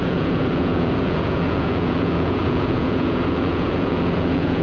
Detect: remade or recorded remade